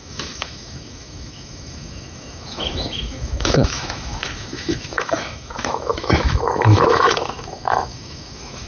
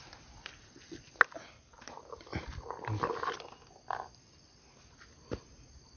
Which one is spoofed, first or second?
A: first